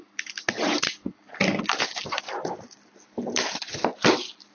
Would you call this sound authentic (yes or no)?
yes